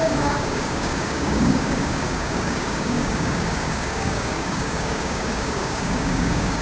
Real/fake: fake